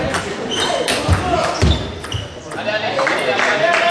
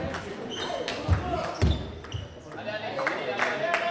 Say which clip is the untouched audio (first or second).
second